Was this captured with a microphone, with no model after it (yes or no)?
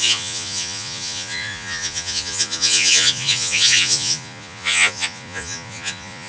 no